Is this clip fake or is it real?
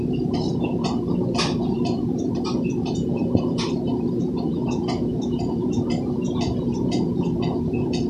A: fake